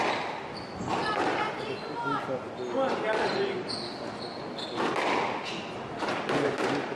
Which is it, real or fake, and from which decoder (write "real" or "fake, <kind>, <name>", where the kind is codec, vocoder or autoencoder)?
real